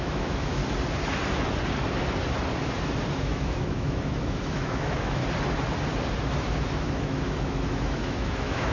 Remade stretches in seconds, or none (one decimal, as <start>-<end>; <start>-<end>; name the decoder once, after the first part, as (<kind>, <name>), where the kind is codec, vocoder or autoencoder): 0.0-0.6 (autoencoder, DAC-VAE); 3.1-5.2; 6.2-8.7

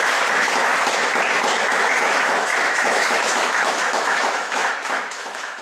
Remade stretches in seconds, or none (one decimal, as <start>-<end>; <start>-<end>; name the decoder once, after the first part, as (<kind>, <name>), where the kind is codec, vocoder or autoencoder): 0.0-0.7 (autoencoder, DAC-VAE); 1.5-5.6

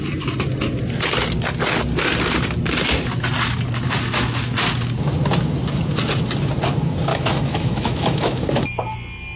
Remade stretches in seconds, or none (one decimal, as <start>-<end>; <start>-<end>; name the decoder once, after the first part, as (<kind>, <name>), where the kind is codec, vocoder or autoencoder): 7.1-8.3 (autoencoder, DAC-VAE)

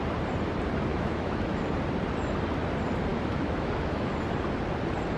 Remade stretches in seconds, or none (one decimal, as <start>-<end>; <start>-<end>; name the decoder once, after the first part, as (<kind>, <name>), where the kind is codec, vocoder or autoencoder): 0.9-1.6 (autoencoder, DAC-VAE); 3.1-4.1

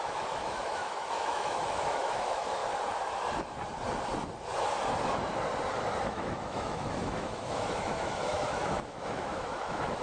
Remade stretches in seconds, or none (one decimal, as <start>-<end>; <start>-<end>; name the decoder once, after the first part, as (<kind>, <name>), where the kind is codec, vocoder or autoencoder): 0.0-2.6 (autoencoder, DAC-VAE); 6.0-10.0

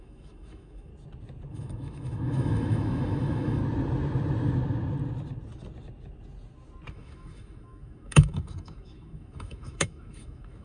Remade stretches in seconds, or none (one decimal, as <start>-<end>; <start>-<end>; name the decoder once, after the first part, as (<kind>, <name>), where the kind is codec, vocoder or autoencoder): 0.0-0.9 (autoencoder, DAC-VAE); 1.5-3.6; 6.9-10.6

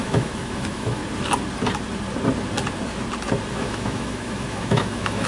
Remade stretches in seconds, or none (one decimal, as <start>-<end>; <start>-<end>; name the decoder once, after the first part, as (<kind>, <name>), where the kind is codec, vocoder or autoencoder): 0.0-1.0 (autoencoder, DAC-VAE); 3.5-5.3